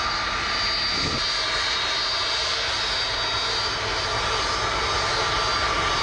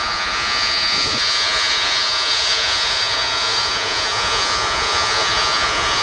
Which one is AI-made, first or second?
second